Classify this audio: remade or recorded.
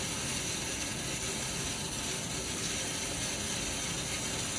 recorded